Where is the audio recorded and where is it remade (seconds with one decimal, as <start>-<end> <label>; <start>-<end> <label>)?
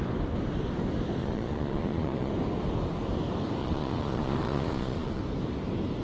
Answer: 0.0-1.2 recorded; 1.2-2.3 remade; 2.3-3.6 recorded; 3.6-5.2 remade; 5.2-6.0 recorded